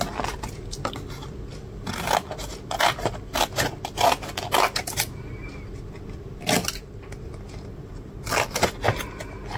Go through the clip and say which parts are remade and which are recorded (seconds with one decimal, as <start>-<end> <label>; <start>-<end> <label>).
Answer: 0.0-9.6 recorded